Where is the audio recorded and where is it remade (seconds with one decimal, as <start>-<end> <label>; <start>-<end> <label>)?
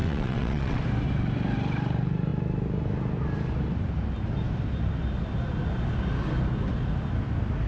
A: 0.0-0.8 remade; 0.8-7.7 recorded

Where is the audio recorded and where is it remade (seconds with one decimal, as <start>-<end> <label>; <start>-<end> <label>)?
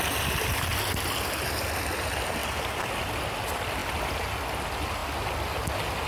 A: 0.0-2.4 recorded; 2.4-3.1 remade; 3.1-3.8 recorded; 3.8-4.3 remade; 4.3-6.1 recorded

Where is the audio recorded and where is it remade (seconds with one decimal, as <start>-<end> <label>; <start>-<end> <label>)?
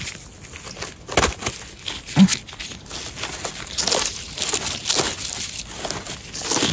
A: 0.0-6.7 recorded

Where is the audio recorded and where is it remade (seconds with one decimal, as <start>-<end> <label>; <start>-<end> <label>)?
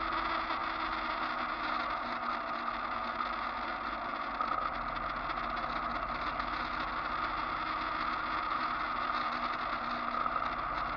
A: 0.0-11.0 recorded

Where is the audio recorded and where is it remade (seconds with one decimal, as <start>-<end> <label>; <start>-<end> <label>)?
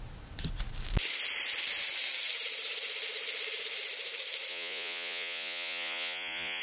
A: 0.0-4.5 recorded; 4.5-6.6 remade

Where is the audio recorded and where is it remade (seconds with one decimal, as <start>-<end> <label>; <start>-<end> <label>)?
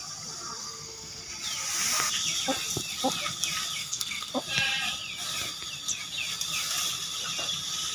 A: 0.0-0.6 recorded; 0.6-1.2 remade; 1.2-3.8 recorded; 3.8-4.3 remade; 4.3-7.9 recorded